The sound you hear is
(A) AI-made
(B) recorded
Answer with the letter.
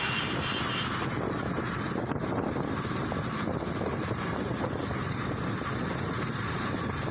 B